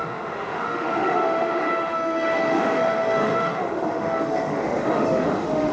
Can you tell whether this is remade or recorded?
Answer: remade